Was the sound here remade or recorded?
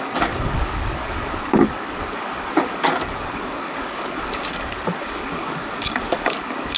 remade